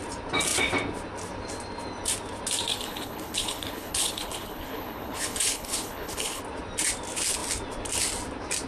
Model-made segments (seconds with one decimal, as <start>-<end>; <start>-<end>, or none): 2.7-6.4